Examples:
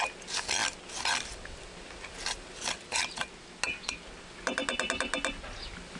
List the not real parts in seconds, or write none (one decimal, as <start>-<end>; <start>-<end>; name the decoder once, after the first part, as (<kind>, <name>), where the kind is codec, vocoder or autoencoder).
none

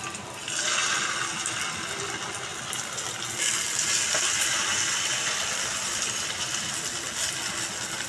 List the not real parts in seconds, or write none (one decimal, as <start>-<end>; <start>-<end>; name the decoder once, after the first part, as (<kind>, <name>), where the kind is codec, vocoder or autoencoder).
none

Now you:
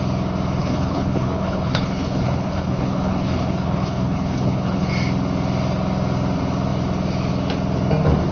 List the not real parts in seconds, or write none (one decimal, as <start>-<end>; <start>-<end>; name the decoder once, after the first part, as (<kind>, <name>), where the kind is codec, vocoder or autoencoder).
0.6-4.9 (codec, HILCodec)